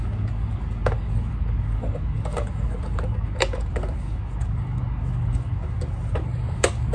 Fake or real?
fake